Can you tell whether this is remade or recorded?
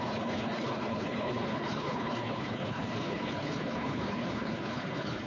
remade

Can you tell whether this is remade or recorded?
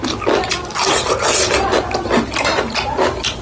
recorded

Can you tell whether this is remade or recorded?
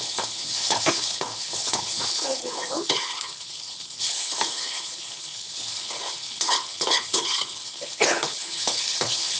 remade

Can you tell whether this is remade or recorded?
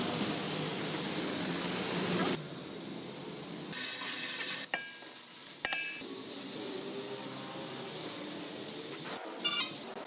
recorded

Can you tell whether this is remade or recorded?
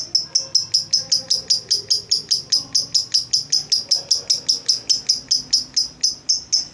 recorded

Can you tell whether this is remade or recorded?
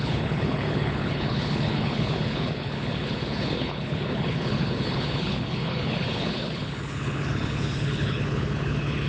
remade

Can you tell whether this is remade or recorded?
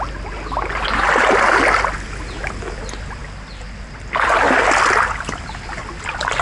recorded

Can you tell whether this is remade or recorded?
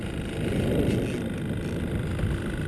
recorded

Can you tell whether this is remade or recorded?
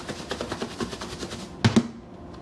recorded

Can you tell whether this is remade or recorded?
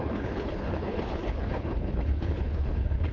remade